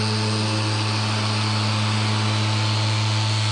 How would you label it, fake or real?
real